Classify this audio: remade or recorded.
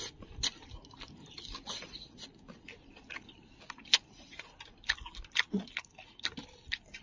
recorded